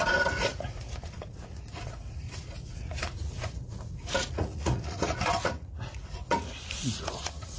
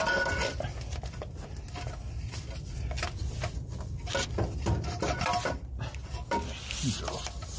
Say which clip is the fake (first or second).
first